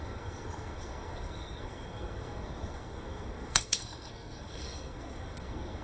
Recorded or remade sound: remade